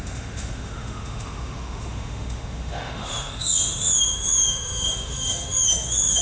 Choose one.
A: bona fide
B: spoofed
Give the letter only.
B